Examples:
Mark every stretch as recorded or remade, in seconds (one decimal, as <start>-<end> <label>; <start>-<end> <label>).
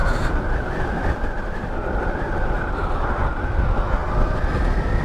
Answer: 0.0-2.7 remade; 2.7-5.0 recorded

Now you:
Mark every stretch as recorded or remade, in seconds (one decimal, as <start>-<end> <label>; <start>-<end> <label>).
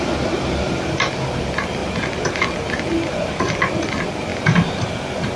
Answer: 0.0-3.1 recorded; 3.1-3.7 remade; 3.7-4.3 recorded; 4.3-5.0 remade; 5.0-5.4 recorded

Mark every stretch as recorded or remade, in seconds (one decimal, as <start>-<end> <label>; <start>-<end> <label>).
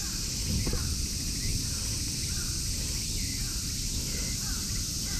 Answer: 0.0-5.2 recorded